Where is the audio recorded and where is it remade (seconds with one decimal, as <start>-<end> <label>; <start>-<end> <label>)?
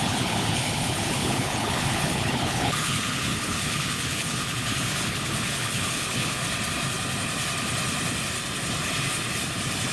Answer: 0.0-6.4 remade; 6.4-9.9 recorded